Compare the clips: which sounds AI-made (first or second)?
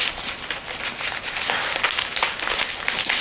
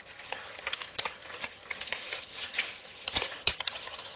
second